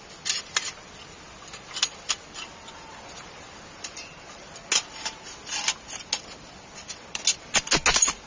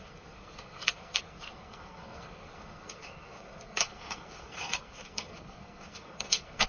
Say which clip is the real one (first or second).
first